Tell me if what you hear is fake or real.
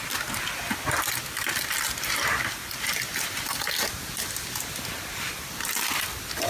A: real